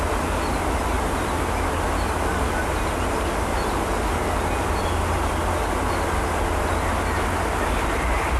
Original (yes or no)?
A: yes